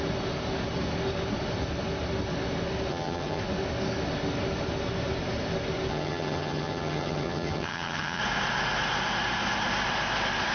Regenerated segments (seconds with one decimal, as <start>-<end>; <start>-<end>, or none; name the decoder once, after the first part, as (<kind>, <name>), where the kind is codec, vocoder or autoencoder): 2.9-3.4 (vocoder, HiFi-GAN); 5.9-8.2